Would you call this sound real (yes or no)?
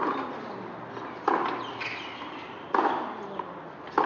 yes